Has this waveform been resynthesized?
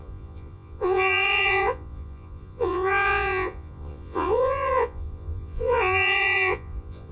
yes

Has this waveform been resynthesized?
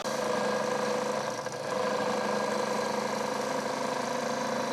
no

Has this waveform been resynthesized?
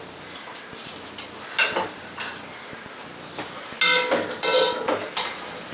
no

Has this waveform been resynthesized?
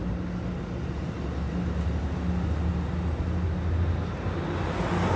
no